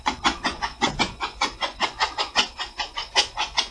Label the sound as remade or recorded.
remade